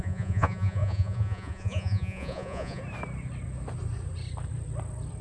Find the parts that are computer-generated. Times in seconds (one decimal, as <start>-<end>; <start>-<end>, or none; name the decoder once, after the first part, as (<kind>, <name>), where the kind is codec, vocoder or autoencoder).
0.0-2.8 (vocoder, Vocos)